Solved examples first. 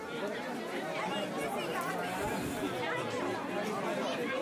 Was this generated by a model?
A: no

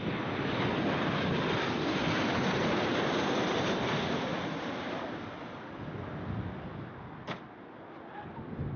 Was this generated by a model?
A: no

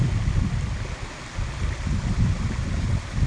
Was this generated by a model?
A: no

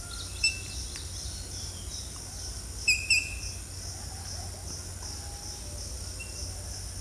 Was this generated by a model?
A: no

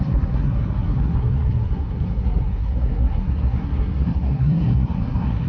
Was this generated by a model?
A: yes